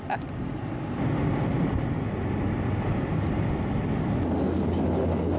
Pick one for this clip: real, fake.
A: real